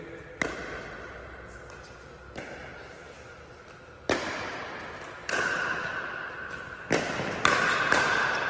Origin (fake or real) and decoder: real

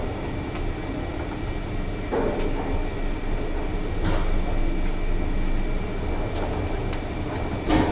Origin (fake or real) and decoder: real